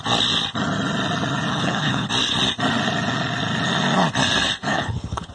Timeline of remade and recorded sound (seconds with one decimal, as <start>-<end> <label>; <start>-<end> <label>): 0.0-1.5 recorded; 1.5-2.1 remade; 2.1-4.7 recorded; 4.7-5.3 remade